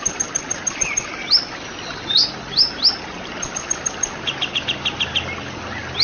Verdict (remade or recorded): recorded